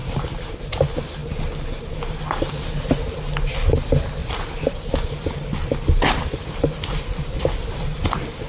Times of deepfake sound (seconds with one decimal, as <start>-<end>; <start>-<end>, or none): 0.0-0.6; 4.2-8.5